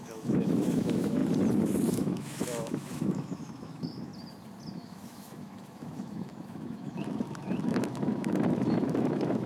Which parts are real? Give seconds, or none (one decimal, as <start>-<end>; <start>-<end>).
1.2-1.9; 4.1-4.7